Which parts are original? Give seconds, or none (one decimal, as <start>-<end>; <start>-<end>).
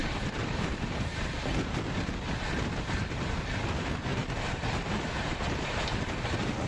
1.3-4.1; 5.9-6.7